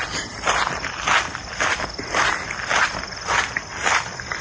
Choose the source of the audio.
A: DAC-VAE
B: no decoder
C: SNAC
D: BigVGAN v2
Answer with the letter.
B